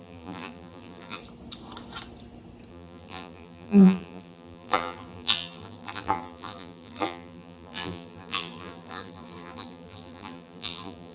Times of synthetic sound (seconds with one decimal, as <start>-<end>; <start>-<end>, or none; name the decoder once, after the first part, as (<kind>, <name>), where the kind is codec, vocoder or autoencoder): 0.0-1.2 (vocoder, BigVGAN v2); 2.7-11.1